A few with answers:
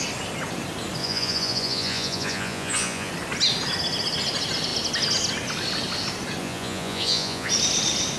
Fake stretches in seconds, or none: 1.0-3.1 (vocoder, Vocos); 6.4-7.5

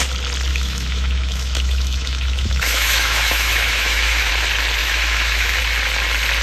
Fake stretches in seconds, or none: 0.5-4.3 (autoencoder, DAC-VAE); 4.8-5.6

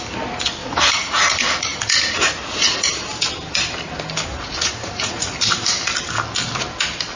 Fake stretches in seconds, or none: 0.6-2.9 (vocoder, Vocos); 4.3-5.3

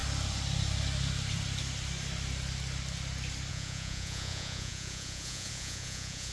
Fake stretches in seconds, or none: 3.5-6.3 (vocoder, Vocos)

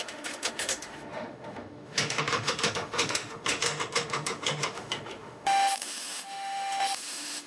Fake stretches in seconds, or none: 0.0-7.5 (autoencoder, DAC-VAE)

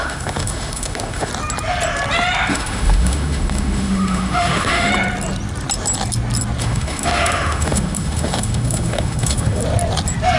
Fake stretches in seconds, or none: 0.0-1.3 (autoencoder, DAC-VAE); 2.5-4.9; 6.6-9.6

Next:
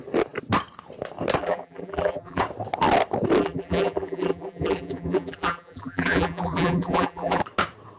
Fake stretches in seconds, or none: 1.4-2.4 (vocoder, BigVGAN v2); 3.4-7.4